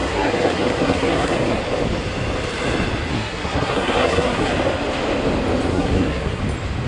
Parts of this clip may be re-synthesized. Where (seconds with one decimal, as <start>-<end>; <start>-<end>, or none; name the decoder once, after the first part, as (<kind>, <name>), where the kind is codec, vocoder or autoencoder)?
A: 0.0-1.6 (codec, SNAC); 3.1-4.5; 5.7-6.4